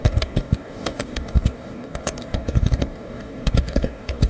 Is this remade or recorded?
remade